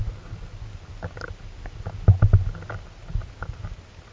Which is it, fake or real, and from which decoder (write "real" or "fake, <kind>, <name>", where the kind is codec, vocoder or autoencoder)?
real